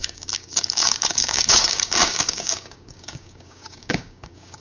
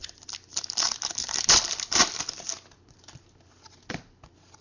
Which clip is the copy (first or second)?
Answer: first